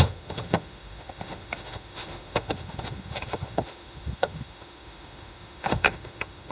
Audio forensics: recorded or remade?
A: remade